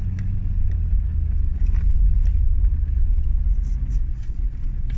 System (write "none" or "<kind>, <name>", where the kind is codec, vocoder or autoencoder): none